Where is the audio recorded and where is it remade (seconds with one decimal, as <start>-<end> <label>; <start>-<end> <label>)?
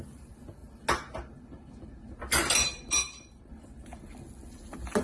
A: 0.0-5.0 recorded